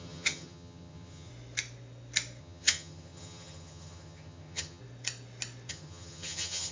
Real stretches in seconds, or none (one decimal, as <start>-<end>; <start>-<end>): 1.3-2.4; 4.8-5.7